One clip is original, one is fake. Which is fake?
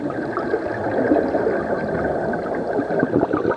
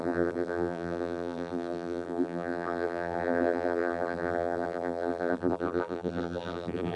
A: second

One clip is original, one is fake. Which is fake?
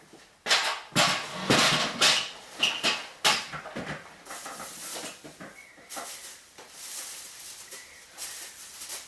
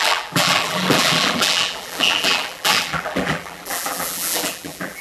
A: second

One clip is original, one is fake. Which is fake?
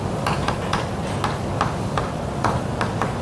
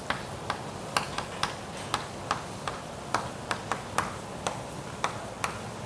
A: first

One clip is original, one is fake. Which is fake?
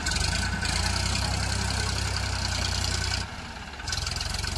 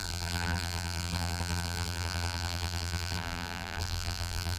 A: second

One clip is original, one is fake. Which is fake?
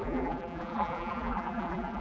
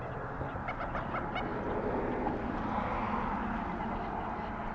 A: first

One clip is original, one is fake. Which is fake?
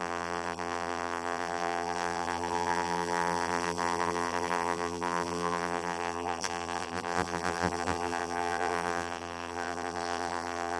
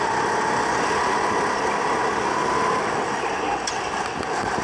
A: first